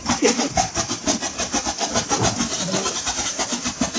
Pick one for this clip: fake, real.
fake